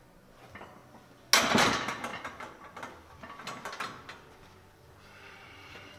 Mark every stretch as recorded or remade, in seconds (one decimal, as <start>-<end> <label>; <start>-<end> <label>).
0.0-0.8 remade; 0.8-1.4 recorded; 1.4-2.1 remade; 2.1-4.3 recorded; 4.3-6.0 remade